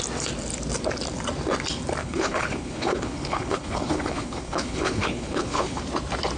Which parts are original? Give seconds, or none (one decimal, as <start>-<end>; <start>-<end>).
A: 0.0-2.0; 5.8-6.4